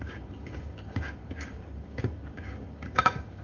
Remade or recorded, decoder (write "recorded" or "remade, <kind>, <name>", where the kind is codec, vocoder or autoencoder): remade, codec, DAC